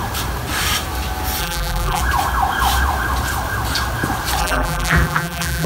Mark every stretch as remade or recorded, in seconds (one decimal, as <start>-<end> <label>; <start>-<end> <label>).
0.0-1.4 recorded; 1.4-2.0 remade; 2.0-4.4 recorded; 4.4-5.7 remade